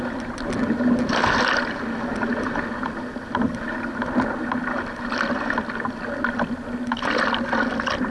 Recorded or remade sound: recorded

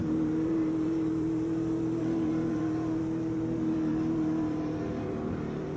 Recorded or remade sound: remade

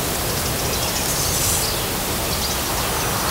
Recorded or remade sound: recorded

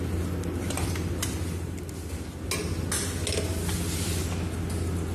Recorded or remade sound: recorded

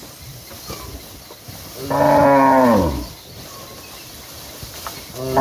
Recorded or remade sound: recorded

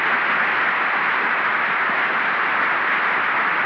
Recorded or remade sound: recorded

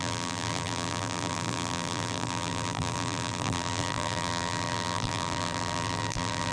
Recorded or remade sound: remade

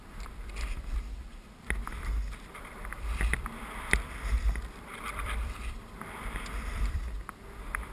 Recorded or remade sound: remade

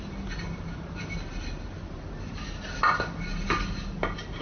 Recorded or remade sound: recorded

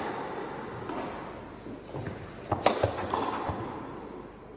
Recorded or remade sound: recorded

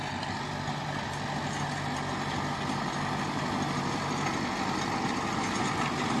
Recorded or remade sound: recorded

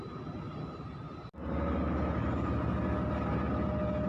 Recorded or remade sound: recorded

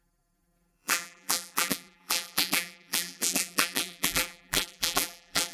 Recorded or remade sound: remade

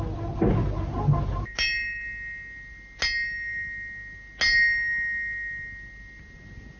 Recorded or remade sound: recorded